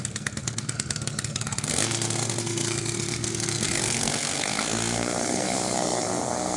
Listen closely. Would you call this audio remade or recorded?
remade